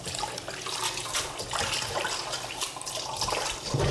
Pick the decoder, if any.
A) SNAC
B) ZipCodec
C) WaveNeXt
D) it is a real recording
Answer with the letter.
D